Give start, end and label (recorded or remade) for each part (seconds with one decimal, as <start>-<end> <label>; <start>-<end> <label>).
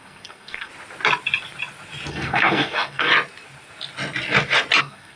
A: 0.0-0.7 remade; 0.7-2.1 recorded; 2.1-3.1 remade; 3.1-4.8 recorded; 4.8-5.2 remade